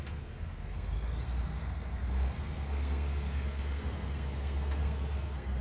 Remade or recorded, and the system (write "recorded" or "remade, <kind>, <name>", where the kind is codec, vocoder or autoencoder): remade, codec, SNAC